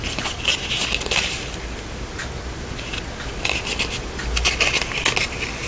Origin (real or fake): real